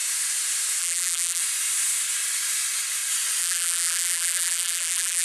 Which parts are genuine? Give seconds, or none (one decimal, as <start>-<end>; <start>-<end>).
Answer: 0.0-0.8; 1.4-3.4